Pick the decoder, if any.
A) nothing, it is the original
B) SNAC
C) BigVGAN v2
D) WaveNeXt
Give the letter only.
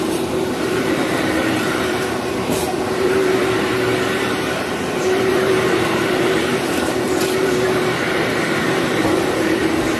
C